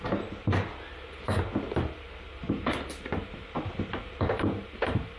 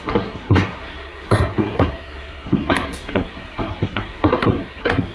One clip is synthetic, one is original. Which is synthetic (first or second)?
second